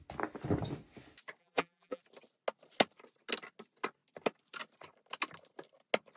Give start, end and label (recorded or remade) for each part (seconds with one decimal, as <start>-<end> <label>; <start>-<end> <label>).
0.0-1.4 recorded; 1.4-2.0 remade; 2.0-6.2 recorded